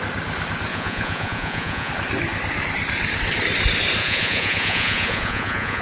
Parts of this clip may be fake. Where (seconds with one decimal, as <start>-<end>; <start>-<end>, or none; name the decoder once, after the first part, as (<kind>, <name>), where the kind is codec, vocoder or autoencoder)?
0.7-1.9 (vocoder, Vocos); 4.0-5.8